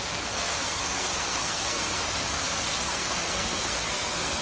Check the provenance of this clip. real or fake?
fake